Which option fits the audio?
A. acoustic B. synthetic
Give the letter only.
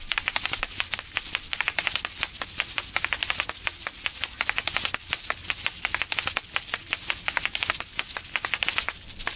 A